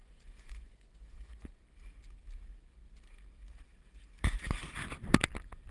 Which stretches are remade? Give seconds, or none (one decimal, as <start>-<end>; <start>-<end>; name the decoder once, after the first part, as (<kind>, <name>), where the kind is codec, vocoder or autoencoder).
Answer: 0.0-1.5 (vocoder, Vocos)